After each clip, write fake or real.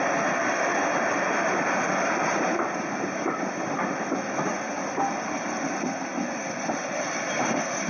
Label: real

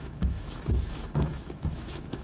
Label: fake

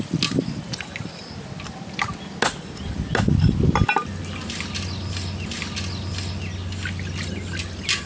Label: real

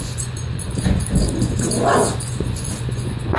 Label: fake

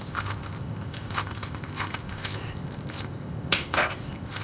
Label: fake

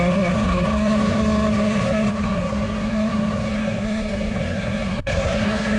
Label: fake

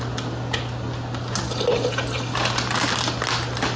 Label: real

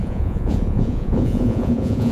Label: fake